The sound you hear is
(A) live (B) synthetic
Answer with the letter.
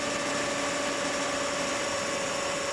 A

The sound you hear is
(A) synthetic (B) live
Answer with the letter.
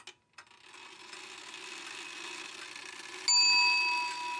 B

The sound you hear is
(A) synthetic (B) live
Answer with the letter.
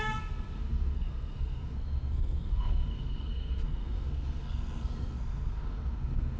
A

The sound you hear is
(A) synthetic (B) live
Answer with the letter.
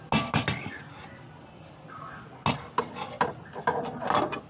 B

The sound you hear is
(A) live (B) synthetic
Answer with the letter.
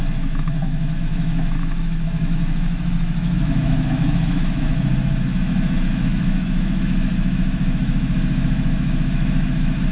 B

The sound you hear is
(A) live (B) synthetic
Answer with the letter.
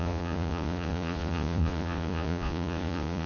B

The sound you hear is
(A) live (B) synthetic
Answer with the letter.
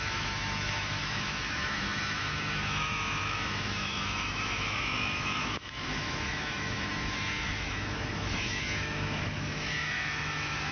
B